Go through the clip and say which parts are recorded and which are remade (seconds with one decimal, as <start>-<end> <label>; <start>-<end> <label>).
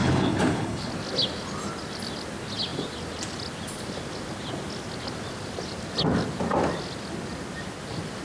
0.0-0.9 remade; 0.9-8.2 recorded